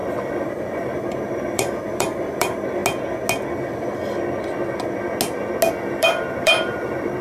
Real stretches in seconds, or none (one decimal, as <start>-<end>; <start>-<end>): 2.8-5.7